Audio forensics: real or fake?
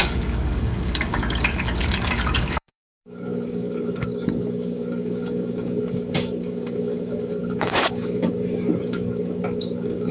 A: fake